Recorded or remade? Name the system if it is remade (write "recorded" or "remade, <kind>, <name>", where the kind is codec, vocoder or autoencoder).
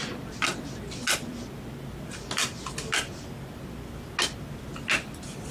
recorded